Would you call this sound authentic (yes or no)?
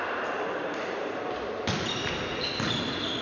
yes